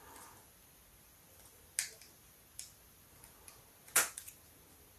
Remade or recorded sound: recorded